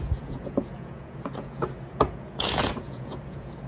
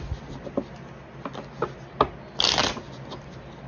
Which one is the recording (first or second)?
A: second